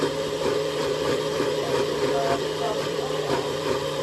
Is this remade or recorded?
remade